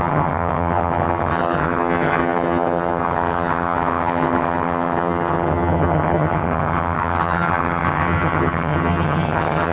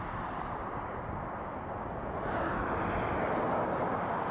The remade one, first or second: first